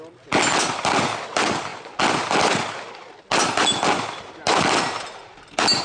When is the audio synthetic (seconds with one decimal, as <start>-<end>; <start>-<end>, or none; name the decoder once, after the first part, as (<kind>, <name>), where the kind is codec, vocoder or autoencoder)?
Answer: none